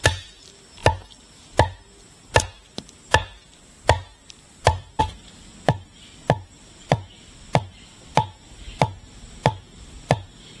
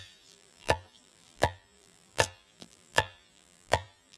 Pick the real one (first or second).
first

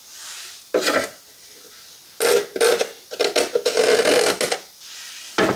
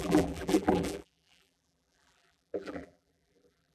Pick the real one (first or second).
first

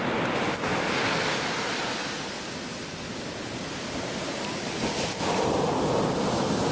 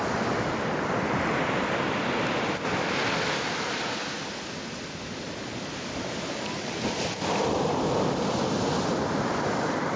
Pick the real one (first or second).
first